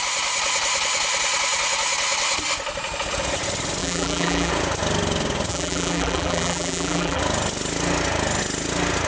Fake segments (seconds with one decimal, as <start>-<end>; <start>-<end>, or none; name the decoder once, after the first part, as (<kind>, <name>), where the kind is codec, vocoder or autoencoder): 3.8-4.5 (vocoder, BigVGAN v2); 5.5-7.2

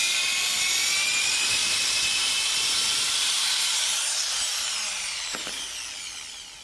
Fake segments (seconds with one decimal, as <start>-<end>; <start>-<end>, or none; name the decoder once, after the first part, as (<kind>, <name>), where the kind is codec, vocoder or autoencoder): 0.0-0.6 (vocoder, BigVGAN v2); 1.6-5.6

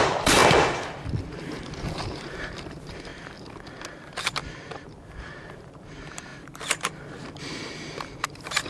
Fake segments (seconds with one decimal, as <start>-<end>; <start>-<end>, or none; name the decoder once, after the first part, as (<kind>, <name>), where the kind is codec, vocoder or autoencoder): 0.0-0.4 (vocoder, BigVGAN v2); 1.2-3.1; 4.5-8.7